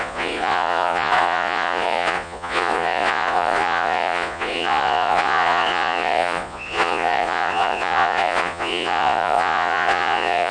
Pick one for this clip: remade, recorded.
remade